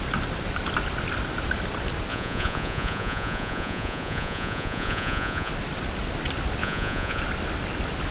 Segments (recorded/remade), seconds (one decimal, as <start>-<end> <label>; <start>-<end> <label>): 0.0-2.1 recorded; 2.1-5.5 remade; 5.5-6.6 recorded; 6.6-7.2 remade; 7.2-8.1 recorded